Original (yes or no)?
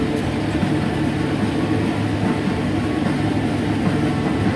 yes